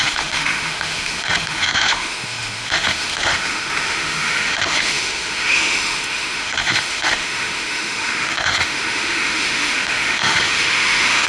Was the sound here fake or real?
fake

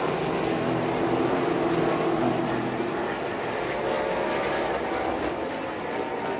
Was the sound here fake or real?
real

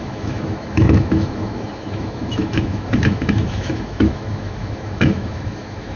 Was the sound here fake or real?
fake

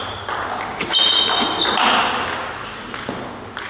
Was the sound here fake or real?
real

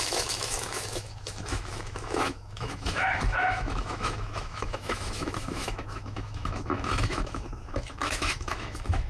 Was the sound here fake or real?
fake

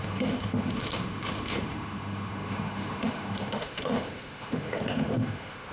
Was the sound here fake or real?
fake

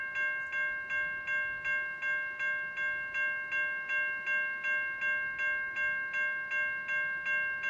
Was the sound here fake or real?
real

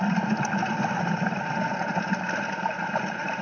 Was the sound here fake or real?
real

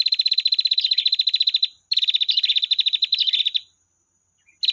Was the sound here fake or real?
real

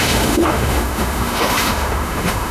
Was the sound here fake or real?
fake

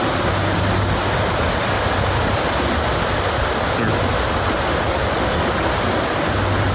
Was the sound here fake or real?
real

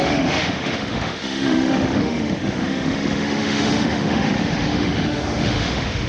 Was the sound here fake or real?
fake